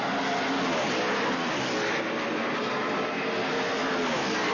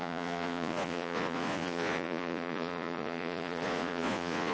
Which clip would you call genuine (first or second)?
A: first